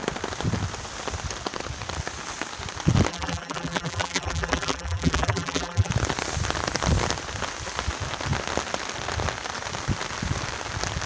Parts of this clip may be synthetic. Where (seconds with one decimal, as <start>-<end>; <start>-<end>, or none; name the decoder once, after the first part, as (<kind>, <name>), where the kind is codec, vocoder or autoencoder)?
3.1-5.9 (vocoder, BigVGAN v2)